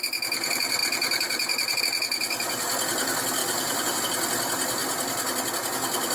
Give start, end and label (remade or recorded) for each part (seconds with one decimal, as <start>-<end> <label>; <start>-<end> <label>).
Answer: 0.0-0.8 recorded; 0.8-1.8 remade; 1.8-3.4 recorded; 3.4-4.0 remade; 4.0-6.1 recorded